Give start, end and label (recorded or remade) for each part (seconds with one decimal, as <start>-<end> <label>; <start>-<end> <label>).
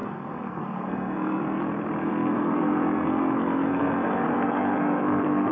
0.0-1.6 remade; 1.6-2.0 recorded; 2.0-5.5 remade